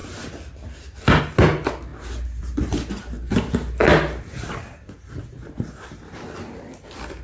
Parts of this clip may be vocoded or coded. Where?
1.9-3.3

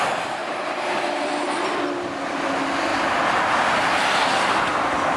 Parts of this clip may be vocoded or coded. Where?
0.4-1.8

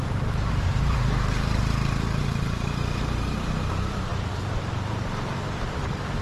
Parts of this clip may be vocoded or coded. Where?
0.0-1.6; 2.2-6.2

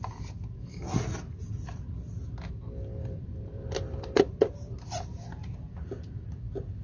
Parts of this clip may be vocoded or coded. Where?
3.0-4.2

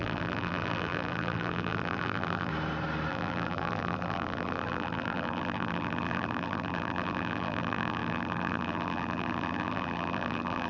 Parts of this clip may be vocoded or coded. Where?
0.0-2.5; 3.1-10.7